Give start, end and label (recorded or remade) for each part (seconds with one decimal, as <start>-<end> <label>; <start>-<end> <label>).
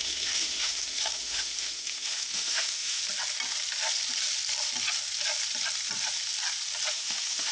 0.0-3.0 remade; 3.0-6.9 recorded; 6.9-7.5 remade